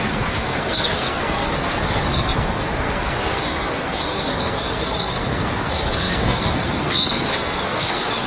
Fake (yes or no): yes